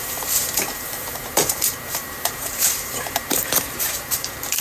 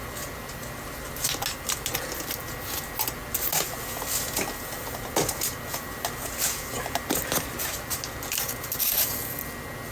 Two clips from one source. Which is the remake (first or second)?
first